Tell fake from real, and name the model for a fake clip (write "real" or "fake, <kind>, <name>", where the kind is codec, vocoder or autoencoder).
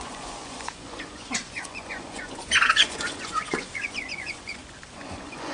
fake, vocoder, Vocos